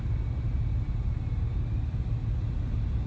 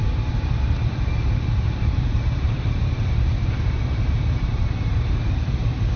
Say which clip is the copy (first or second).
second